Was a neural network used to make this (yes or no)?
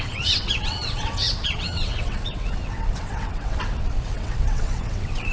yes